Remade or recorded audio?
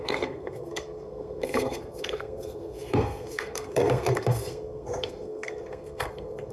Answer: remade